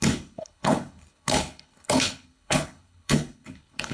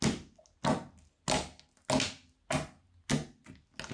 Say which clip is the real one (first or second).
second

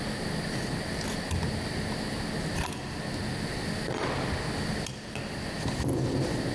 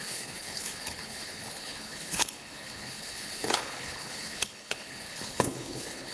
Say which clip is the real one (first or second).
first